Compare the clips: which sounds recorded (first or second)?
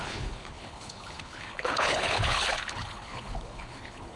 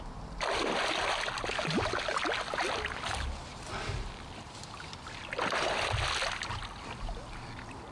second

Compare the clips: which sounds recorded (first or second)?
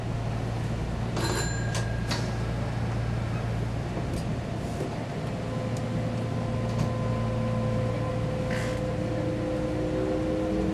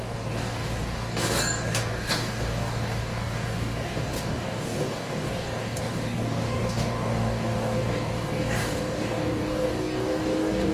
first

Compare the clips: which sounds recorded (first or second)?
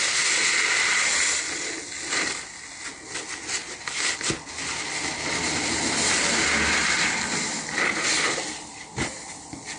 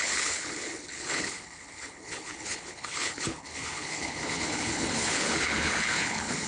first